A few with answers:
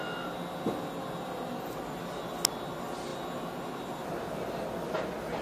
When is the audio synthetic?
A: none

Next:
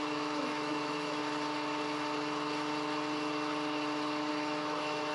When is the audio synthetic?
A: 0.0-1.2 (autoencoder, DAC-VAE); 4.3-5.1

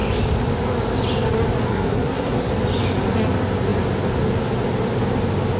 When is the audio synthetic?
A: 1.7-2.5 (codec, SNAC)

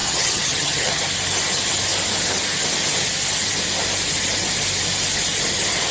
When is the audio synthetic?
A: 0.0-1.0 (vocoder, HiFi-GAN)